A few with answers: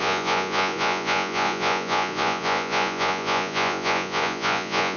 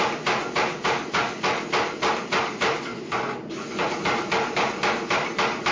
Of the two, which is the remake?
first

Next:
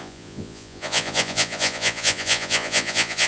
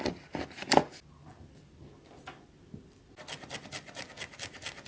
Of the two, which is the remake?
first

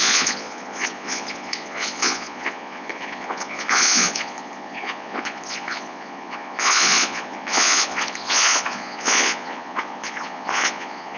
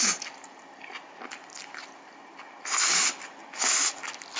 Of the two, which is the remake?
first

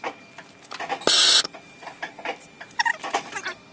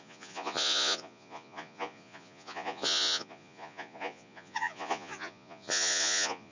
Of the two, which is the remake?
second